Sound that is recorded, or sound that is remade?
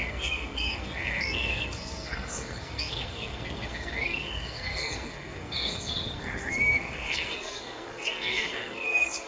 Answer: remade